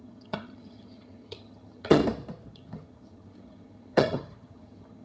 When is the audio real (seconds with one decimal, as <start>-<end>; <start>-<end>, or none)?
2.0-2.5